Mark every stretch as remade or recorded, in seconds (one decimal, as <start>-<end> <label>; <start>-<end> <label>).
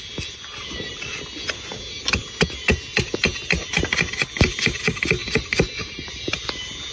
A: 0.0-5.2 recorded; 5.2-6.2 remade; 6.2-6.9 recorded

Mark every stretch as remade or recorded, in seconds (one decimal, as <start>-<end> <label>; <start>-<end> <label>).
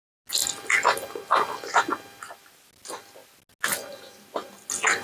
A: 0.0-5.0 recorded